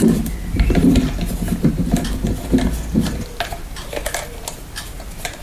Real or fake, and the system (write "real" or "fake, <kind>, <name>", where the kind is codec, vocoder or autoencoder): real